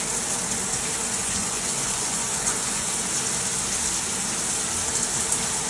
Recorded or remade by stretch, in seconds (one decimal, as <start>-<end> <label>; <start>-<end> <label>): 0.0-1.2 recorded; 1.2-2.9 remade; 2.9-5.7 recorded